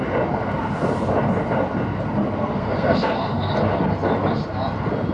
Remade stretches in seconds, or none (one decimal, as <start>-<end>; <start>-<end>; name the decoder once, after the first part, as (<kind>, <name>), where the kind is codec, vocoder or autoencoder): 2.4-3.5 (codec, SNAC)